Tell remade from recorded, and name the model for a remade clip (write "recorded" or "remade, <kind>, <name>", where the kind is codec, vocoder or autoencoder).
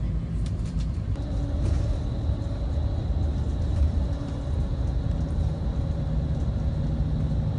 recorded